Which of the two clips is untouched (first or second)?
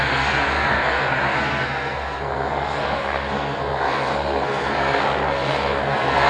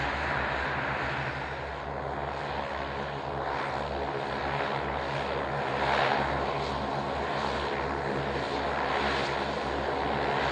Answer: second